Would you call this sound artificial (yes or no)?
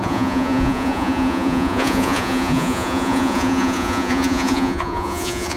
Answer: yes